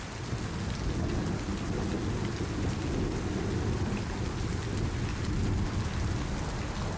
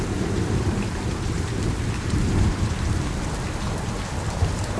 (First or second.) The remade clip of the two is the second